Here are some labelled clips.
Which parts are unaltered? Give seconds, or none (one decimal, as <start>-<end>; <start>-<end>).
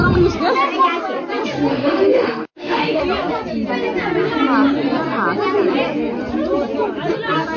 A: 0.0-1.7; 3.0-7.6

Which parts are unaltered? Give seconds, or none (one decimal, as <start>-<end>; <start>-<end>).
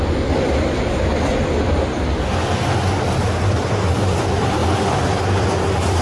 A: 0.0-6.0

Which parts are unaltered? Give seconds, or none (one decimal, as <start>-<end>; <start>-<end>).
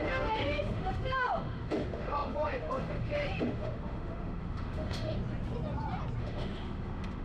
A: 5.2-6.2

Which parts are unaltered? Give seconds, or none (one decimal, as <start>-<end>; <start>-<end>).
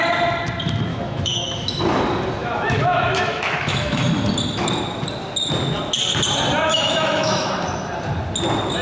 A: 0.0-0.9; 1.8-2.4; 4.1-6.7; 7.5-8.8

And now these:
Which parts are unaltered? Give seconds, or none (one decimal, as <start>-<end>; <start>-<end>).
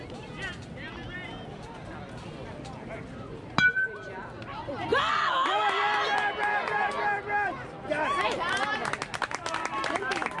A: 0.0-10.4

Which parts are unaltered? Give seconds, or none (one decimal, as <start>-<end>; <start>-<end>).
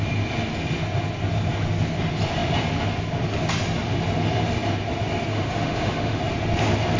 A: 0.0-5.3; 6.2-7.0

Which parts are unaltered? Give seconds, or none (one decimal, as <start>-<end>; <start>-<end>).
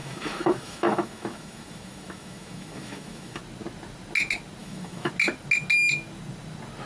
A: 3.4-4.6; 5.1-6.9